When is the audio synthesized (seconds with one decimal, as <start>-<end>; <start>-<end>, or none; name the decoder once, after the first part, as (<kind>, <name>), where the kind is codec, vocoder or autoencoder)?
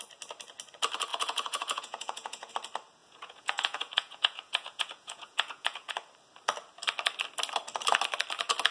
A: 1.1-2.5 (vocoder, Vocos); 3.0-5.9